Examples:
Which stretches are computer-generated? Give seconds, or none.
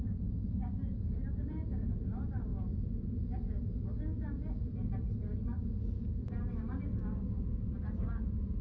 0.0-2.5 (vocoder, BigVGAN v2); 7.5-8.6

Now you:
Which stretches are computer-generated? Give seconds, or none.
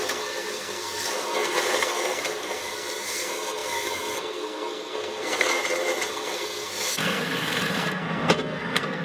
0.0-5.6 (codec, SNAC); 6.1-9.0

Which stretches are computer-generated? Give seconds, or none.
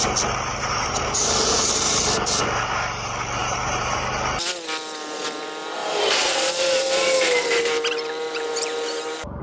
0.5-2.0 (vocoder, BigVGAN v2); 3.4-4.1; 5.8-9.4